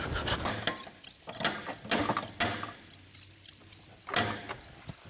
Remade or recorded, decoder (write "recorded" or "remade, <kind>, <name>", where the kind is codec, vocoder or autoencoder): recorded